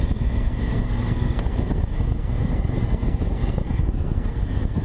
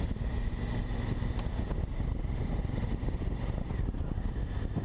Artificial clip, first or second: first